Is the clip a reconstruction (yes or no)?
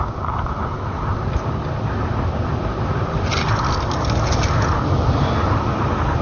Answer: no